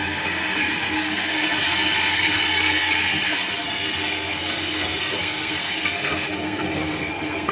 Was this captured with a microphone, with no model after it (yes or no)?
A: no